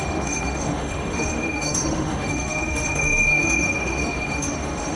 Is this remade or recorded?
remade